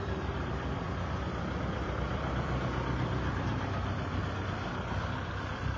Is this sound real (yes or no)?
no